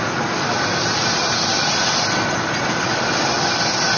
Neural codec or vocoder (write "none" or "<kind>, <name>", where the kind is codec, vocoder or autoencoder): none